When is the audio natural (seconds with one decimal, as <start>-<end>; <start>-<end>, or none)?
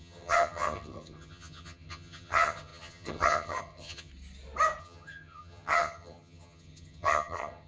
4.1-4.8